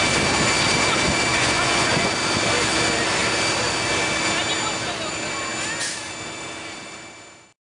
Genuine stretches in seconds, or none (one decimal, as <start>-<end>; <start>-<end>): 0.0-1.3; 2.1-7.6